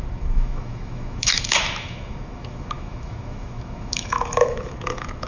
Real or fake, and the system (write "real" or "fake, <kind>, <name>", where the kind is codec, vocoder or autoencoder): fake, autoencoder, DAC-VAE